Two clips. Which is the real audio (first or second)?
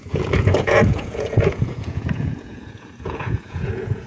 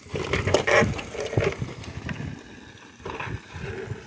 second